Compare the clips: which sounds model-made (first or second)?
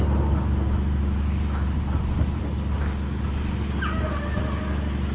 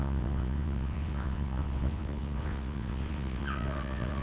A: second